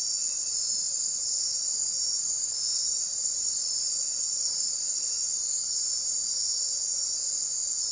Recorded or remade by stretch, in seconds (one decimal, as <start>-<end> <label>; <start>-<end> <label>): 0.0-0.8 recorded; 0.8-2.1 remade; 2.1-2.8 recorded; 2.8-5.9 remade; 5.9-7.9 recorded